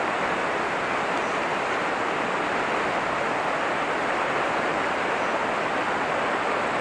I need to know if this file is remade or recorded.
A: recorded